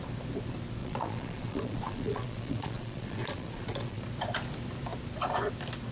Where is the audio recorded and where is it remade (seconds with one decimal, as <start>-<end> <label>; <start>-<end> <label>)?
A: 0.0-0.8 recorded; 0.8-4.0 remade; 4.0-5.9 recorded